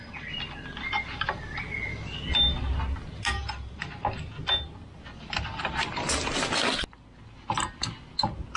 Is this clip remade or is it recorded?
recorded